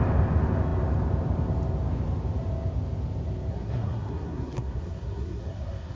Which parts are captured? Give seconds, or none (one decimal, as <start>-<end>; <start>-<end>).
0.0-3.5